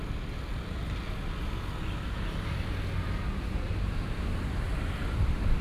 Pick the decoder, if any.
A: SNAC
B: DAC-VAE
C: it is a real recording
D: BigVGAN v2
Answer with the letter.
C